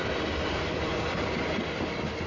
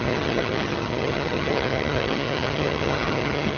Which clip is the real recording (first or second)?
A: first